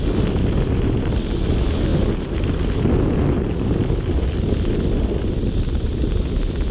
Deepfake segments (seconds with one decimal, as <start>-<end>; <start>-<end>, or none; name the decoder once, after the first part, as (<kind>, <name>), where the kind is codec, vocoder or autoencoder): none